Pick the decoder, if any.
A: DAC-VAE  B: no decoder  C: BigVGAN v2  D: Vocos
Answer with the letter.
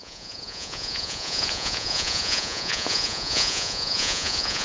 D